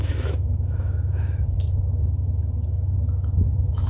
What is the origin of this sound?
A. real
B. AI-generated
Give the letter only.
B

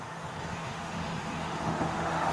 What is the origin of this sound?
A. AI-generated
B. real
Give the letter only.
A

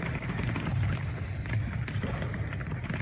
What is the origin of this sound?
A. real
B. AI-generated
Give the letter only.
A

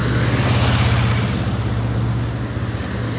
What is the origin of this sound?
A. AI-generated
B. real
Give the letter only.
B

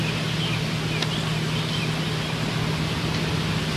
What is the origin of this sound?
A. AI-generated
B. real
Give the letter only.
B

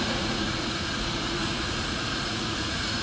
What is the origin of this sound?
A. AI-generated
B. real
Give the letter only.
A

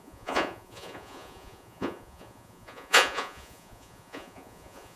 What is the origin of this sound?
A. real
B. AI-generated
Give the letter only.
B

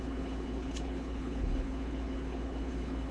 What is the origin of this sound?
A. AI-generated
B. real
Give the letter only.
A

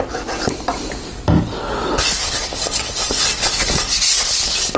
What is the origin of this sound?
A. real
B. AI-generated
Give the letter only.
A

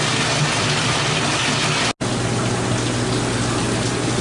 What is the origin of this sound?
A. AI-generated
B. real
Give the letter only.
B